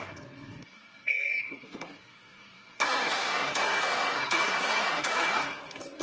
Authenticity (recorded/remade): remade